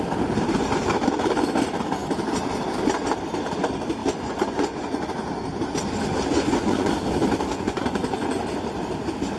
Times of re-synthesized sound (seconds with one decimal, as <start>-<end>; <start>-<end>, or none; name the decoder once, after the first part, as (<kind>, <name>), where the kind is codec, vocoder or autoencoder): 4.0-5.1 (vocoder, Vocos); 6.3-6.9; 7.5-8.4